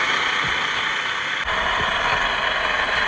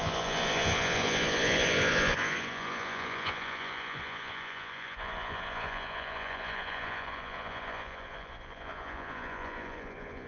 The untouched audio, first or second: first